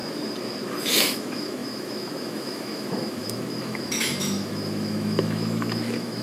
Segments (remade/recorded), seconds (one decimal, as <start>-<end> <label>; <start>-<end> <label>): 0.0-0.9 recorded; 0.9-6.2 remade